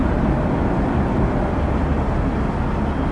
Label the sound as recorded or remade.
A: recorded